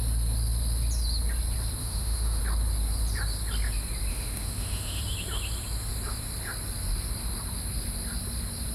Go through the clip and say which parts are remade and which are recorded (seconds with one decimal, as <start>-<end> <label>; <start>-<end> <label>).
0.0-1.8 recorded; 1.8-2.4 remade; 2.4-4.1 recorded; 4.1-5.0 remade; 5.0-8.7 recorded